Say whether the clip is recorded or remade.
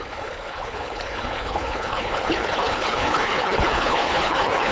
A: remade